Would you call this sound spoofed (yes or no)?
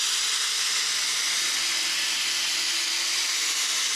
no